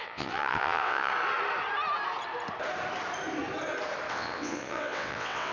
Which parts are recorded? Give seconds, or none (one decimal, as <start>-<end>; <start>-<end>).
1.1-4.1